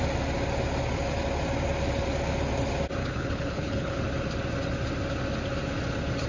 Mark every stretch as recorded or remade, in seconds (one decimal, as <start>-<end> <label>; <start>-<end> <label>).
0.0-3.0 recorded; 3.0-4.0 remade; 4.0-6.3 recorded